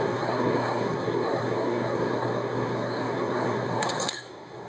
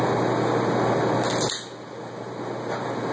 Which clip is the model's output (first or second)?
first